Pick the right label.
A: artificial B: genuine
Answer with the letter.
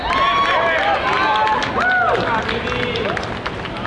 B